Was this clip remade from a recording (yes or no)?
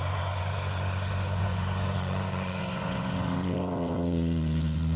yes